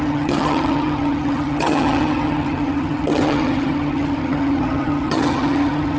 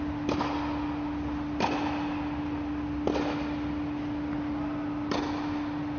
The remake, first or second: first